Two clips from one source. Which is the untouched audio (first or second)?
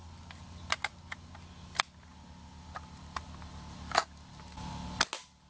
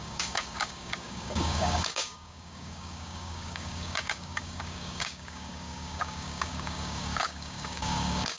first